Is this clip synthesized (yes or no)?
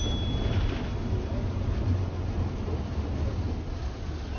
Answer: no